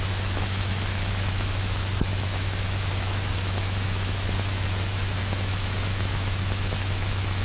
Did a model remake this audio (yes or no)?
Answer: yes